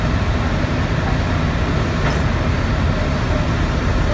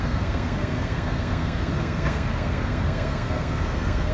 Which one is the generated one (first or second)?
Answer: second